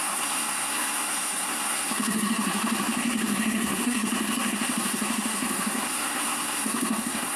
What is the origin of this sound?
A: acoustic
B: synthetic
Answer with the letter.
B